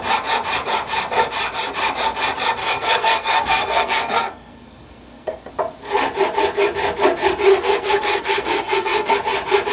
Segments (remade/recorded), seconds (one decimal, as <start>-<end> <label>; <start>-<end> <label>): 0.0-2.6 recorded; 2.6-5.5 remade; 5.5-7.5 recorded; 7.5-9.1 remade; 9.1-9.7 recorded